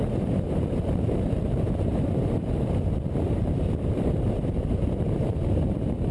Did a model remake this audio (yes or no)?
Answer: yes